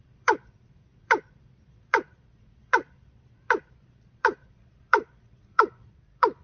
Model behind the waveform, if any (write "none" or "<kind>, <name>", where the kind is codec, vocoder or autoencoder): vocoder, Vocos